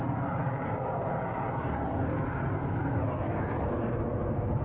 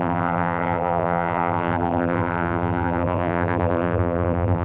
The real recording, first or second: first